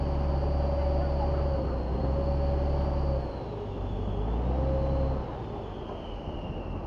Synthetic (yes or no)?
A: no